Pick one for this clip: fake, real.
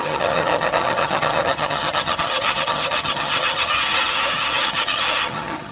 fake